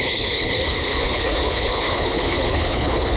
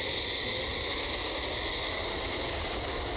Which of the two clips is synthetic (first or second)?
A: first